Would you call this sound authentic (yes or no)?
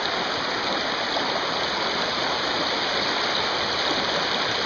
yes